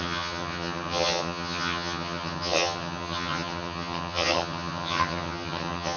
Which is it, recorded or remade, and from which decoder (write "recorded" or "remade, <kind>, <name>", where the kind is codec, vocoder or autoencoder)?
remade, vocoder, HiFi-GAN